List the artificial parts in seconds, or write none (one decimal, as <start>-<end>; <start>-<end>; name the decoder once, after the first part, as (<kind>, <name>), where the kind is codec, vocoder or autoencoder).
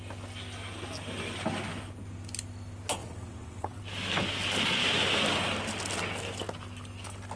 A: 3.0-3.8 (vocoder, WaveNeXt)